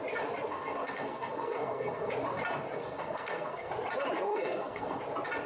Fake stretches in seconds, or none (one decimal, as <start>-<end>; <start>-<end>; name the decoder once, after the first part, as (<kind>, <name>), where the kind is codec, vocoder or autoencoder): 0.5-2.1 (codec, SNAC); 2.8-3.7; 4.3-5.0